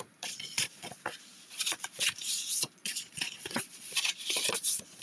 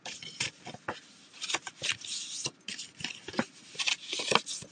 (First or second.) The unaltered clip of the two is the second